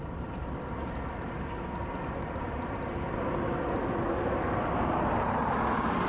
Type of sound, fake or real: real